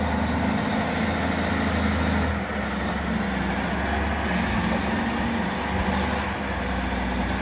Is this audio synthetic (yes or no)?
no